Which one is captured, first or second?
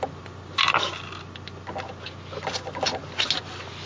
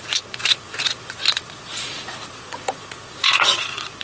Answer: first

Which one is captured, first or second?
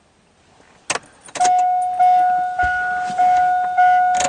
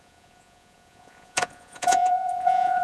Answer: first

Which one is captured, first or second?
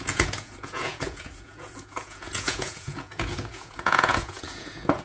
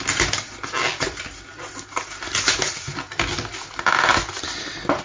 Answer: second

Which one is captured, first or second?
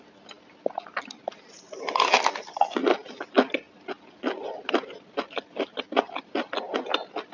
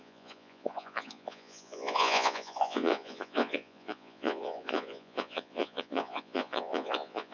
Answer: first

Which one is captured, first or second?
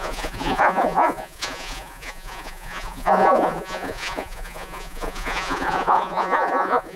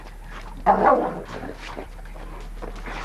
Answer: second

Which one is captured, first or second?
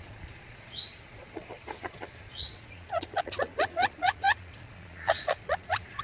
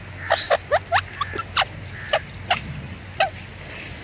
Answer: second